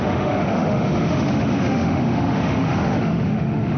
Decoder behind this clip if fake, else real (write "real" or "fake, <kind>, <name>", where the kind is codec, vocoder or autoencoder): fake, autoencoder, DAC-VAE